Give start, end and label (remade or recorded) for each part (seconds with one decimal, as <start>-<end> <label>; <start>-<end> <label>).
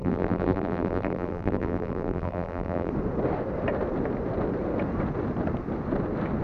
0.0-2.9 remade; 2.9-6.4 recorded